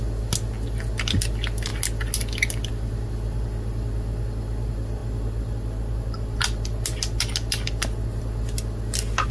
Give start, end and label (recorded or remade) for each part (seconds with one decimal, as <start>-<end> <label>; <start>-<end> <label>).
0.0-9.3 recorded